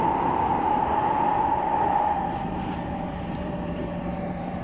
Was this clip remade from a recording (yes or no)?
yes